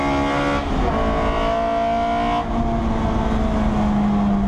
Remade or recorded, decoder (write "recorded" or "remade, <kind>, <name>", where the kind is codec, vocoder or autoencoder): recorded